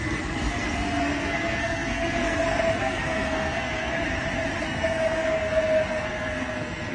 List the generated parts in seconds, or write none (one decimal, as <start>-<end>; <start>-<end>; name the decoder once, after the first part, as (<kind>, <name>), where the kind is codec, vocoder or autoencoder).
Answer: 0.0-4.0 (codec, SNAC); 4.6-6.9